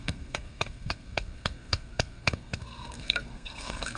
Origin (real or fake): fake